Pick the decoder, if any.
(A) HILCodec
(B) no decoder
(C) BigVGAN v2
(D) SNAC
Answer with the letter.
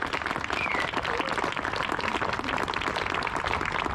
C